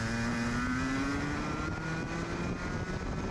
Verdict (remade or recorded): recorded